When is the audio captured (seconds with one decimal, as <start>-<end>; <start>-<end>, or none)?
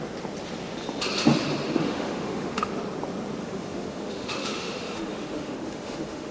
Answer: 0.0-1.8; 2.7-3.4